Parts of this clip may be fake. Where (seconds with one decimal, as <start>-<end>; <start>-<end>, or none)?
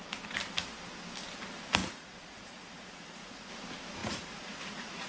1.8-3.5; 4.0-5.1